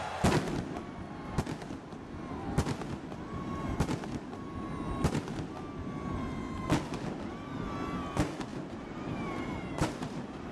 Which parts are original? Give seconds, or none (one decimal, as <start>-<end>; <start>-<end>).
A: 0.0-8.5